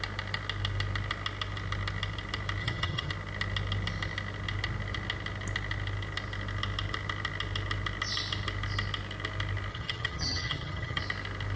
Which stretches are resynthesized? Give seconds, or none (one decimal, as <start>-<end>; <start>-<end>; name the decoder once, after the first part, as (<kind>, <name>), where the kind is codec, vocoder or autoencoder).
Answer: 2.6-3.1 (vocoder, HiFi-GAN); 9.7-11.0